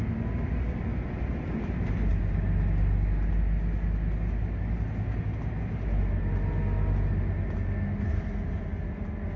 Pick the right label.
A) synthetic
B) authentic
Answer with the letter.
B